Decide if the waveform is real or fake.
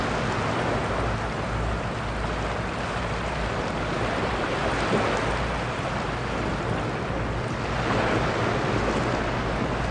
real